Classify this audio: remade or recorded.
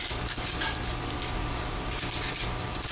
remade